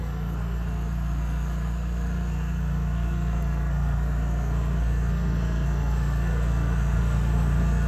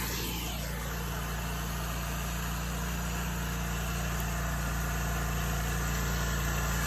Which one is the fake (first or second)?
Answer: first